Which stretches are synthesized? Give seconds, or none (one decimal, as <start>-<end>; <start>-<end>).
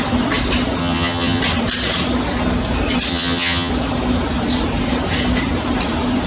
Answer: 0.8-1.4; 3.1-3.7